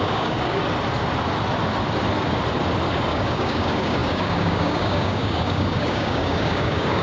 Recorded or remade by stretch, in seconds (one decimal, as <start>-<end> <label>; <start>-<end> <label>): 0.0-0.6 remade; 0.6-3.1 recorded; 3.1-7.0 remade